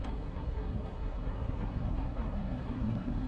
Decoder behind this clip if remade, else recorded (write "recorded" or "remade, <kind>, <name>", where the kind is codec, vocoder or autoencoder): remade, codec, SNAC